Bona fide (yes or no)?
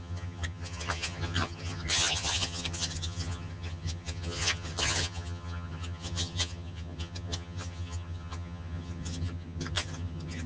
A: no